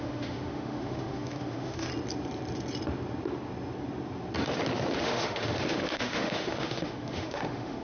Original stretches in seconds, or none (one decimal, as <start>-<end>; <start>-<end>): 1.9-5.0